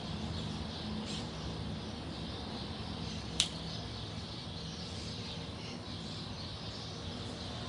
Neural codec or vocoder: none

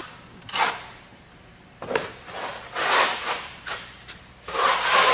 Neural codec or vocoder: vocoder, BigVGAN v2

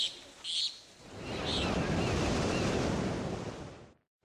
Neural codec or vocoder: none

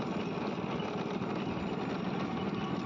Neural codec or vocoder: none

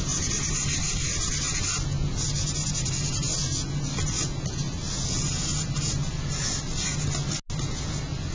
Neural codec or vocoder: none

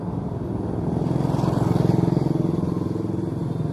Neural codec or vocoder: none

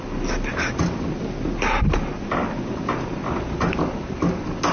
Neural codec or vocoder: none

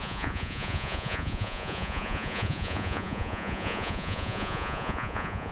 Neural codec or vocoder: vocoder, Vocos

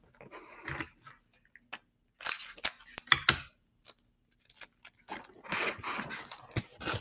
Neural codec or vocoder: none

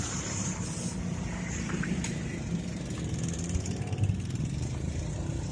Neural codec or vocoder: vocoder, BigVGAN v2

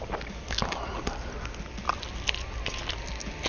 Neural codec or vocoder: none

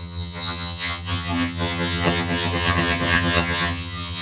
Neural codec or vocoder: vocoder, HiFi-GAN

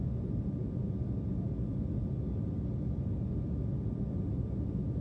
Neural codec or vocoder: none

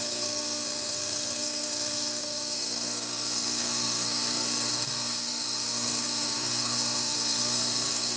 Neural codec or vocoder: codec, SNAC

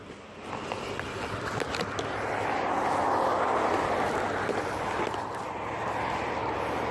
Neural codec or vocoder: none